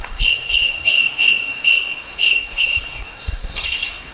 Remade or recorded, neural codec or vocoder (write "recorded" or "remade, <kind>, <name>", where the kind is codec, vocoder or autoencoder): remade, codec, SNAC